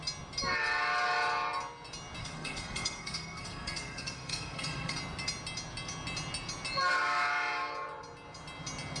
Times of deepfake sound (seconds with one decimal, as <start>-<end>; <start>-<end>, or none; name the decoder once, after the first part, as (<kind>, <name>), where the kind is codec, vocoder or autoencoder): 2.2-5.0 (codec, SNAC)